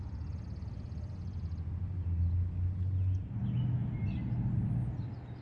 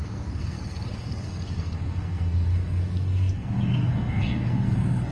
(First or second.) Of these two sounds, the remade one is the second